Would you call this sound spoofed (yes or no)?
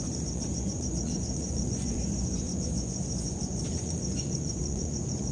yes